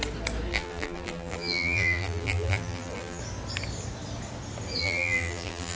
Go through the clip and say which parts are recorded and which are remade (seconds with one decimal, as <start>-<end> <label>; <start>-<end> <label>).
0.0-0.5 recorded; 0.5-3.2 remade; 3.2-4.8 recorded; 4.8-5.8 remade